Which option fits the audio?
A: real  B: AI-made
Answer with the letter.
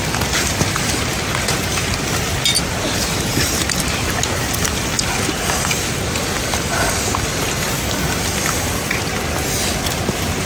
A